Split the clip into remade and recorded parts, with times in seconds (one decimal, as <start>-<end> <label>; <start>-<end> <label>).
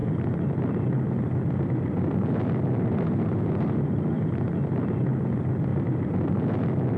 0.0-7.0 recorded